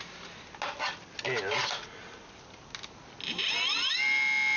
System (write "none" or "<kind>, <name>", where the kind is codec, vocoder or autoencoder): none